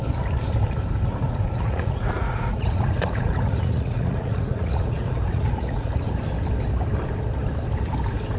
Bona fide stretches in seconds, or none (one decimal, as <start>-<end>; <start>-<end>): 0.0-1.2; 6.2-8.4